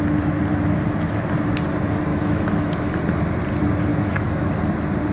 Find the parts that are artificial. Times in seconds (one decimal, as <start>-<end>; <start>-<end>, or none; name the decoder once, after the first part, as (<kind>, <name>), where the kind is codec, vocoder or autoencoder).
2.1-2.7 (autoencoder, DAC-VAE); 3.9-4.5